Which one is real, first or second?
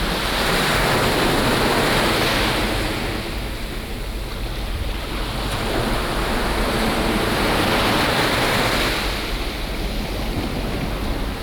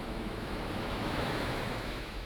first